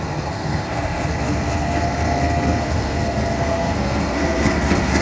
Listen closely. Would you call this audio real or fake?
fake